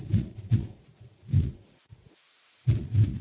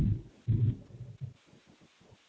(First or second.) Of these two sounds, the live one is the second